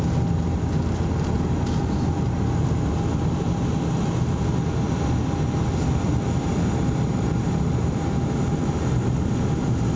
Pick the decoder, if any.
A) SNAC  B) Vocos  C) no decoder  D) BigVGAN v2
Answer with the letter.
C